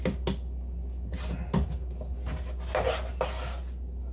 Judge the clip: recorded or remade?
recorded